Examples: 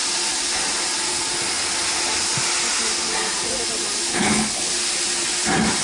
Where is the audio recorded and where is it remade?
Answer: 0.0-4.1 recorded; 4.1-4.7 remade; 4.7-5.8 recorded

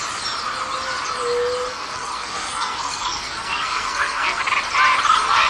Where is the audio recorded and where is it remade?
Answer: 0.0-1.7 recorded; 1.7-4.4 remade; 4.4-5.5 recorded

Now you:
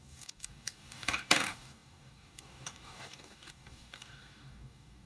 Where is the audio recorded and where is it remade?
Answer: 0.0-5.1 remade